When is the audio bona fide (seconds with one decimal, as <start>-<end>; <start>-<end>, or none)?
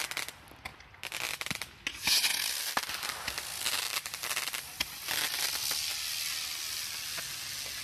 0.0-7.8